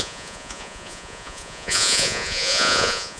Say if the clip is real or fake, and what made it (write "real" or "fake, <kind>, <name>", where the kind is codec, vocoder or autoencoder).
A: fake, vocoder, Vocos